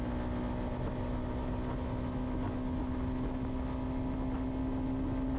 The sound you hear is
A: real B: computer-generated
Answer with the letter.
A